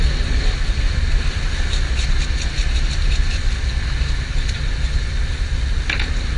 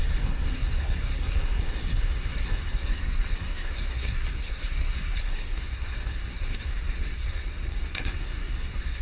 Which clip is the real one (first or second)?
first